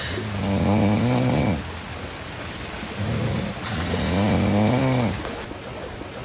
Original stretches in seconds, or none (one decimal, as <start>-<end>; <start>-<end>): 0.0-6.2